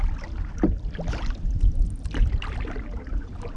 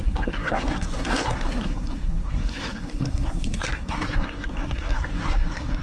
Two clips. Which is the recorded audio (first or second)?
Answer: first